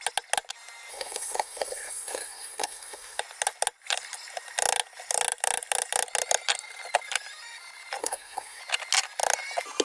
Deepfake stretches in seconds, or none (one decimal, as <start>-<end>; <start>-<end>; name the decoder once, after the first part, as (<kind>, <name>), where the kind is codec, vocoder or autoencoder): 0.9-3.2 (codec, SNAC); 8.0-8.6

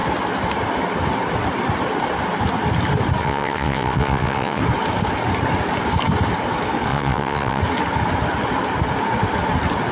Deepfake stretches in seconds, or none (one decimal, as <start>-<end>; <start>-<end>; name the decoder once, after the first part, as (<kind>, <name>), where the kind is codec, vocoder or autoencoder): 3.2-4.6 (vocoder, WaveNeXt); 6.9-7.6

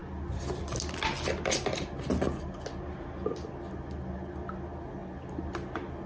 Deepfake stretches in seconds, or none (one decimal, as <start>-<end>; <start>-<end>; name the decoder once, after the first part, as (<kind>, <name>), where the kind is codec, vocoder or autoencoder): none

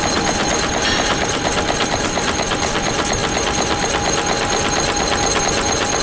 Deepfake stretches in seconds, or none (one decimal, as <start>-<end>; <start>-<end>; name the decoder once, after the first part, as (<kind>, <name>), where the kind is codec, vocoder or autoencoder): 0.0-3.2 (vocoder, BigVGAN v2); 5.4-6.0

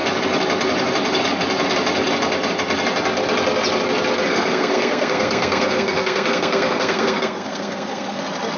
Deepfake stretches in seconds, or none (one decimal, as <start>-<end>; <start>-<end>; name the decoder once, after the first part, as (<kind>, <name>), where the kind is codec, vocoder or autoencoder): 4.3-8.2 (codec, SNAC)

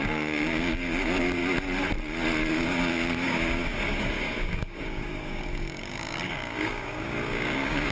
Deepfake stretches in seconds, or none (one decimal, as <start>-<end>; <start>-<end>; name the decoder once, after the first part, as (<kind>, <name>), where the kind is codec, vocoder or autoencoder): 0.0-1.4 (codec, DAC); 2.5-7.9

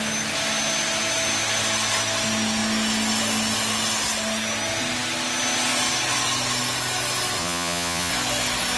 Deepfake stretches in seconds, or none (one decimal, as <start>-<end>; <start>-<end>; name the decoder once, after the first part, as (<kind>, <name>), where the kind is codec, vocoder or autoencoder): 7.4-8.1 (vocoder, Vocos)

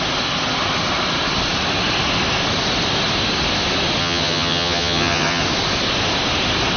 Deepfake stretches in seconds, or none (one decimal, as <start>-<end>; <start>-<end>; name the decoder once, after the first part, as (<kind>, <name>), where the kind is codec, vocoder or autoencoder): 4.0-5.4 (vocoder, HiFi-GAN)